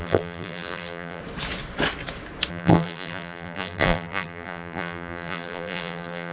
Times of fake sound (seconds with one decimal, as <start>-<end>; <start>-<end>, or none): 0.0-1.2; 2.5-6.3